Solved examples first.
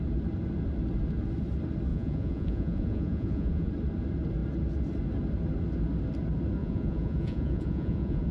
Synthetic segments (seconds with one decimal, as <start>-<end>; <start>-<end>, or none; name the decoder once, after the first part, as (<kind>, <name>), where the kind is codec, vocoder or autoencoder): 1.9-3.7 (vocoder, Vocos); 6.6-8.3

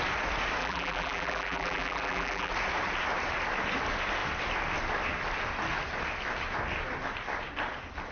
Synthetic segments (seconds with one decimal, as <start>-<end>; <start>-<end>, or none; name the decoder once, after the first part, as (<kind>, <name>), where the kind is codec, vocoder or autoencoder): 0.6-2.5 (vocoder, BigVGAN v2)

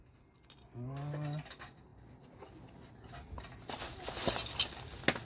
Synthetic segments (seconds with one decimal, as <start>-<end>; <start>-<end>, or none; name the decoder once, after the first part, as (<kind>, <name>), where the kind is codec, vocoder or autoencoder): none